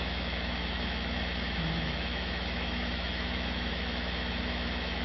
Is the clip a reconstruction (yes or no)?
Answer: yes